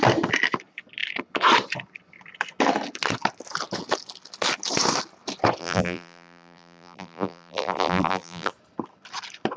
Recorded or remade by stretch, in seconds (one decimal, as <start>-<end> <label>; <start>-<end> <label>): 0.0-5.6 recorded; 5.6-8.5 remade; 8.5-9.6 recorded